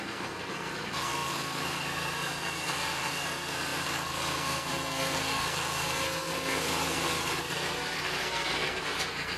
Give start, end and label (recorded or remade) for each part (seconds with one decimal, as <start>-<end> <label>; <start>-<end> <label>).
0.0-9.4 remade